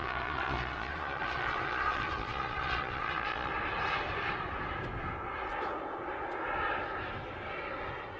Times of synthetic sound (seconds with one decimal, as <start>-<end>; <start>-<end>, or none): 0.0-3.5